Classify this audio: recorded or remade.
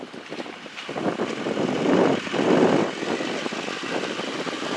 recorded